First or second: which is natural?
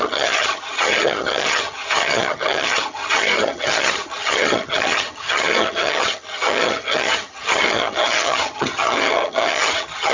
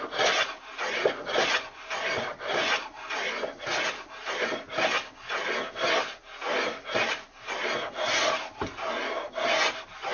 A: second